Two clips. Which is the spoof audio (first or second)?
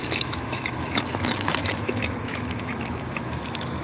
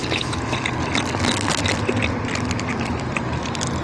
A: first